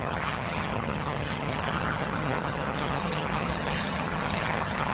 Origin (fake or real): fake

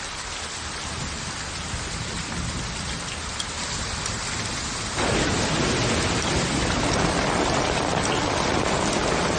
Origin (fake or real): real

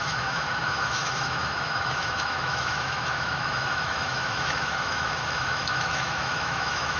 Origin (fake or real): fake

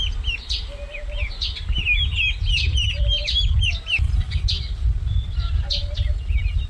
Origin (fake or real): real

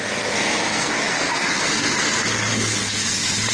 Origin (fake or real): fake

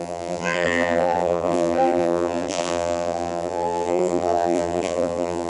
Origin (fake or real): fake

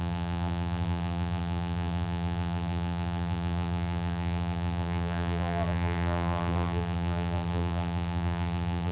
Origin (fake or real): fake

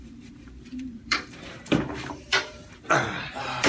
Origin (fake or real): fake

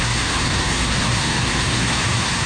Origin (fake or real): fake